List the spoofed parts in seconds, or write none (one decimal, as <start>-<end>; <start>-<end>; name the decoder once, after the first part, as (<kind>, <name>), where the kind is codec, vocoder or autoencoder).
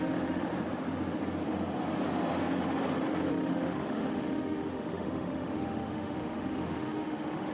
0.0-0.5 (autoencoder, DAC-VAE); 3.3-7.5